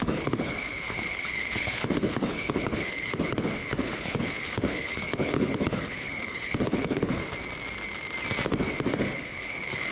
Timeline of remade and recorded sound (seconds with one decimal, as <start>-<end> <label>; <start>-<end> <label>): 0.0-7.2 remade; 7.2-8.9 recorded; 8.9-9.9 remade